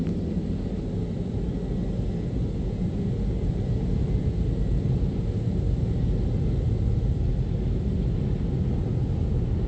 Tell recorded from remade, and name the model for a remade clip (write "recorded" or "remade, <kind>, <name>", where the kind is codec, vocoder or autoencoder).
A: recorded